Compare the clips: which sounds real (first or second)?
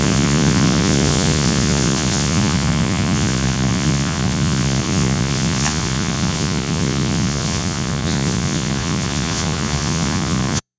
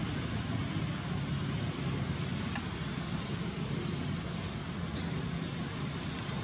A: second